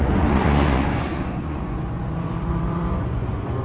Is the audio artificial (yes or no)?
yes